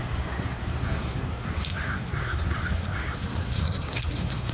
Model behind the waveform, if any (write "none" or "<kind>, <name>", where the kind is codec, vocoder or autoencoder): codec, SNAC